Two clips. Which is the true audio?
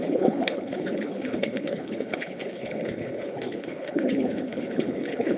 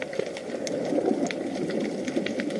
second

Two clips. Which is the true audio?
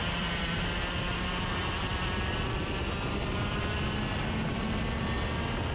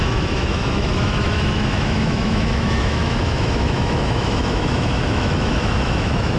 first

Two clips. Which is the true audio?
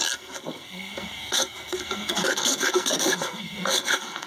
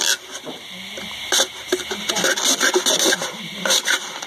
second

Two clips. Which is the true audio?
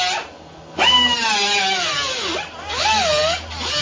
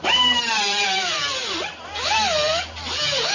first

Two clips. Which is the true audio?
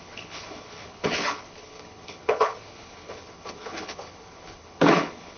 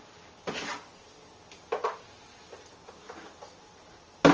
second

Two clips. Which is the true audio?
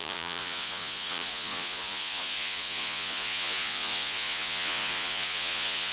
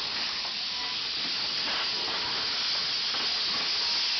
second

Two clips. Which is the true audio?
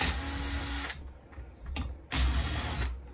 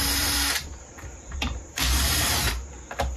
first